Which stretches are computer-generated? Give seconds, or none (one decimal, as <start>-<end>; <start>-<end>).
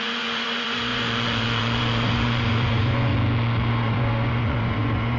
0.0-3.1; 3.7-5.2